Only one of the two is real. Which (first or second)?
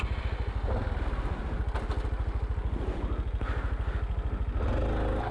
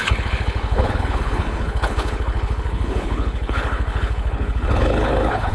first